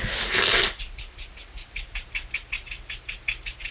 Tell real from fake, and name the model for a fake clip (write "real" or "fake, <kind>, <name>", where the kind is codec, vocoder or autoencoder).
real